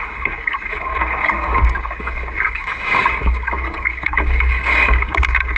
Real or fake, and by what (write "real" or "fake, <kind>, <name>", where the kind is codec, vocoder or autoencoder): fake, codec, DAC